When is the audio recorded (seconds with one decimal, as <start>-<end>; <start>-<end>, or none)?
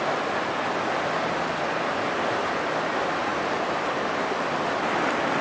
0.0-5.4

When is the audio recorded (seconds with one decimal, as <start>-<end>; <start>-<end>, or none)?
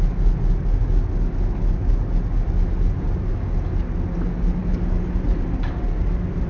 0.0-6.5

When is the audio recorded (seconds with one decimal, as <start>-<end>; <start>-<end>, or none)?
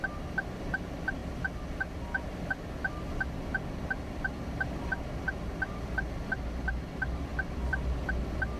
0.0-8.6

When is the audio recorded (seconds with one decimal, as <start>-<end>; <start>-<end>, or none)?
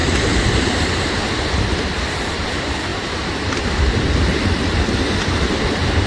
none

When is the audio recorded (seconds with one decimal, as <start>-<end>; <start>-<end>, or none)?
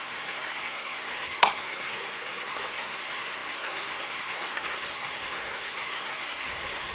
none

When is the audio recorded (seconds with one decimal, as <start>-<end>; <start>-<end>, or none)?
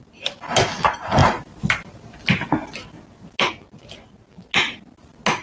0.0-5.4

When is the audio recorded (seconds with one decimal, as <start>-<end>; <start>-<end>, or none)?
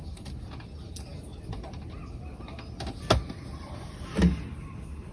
0.0-5.1